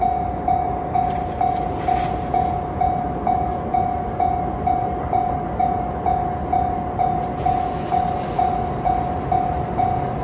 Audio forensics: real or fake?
real